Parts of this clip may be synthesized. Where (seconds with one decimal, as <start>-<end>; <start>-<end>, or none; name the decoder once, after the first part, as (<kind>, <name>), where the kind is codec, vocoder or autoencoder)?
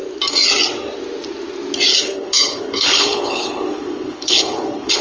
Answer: 1.9-5.0 (codec, HILCodec)